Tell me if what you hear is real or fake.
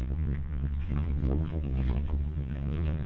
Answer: fake